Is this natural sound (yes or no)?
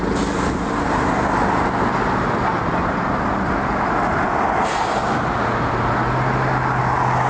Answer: yes